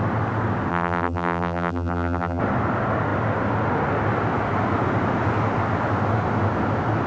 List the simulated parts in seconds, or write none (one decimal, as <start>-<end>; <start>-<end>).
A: 0.7-2.4